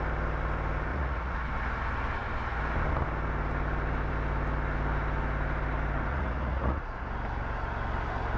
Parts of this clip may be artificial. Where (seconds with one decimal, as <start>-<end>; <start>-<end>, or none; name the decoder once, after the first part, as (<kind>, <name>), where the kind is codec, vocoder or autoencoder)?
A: 0.9-1.4 (vocoder, Vocos); 6.1-7.0